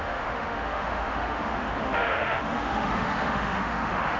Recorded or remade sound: remade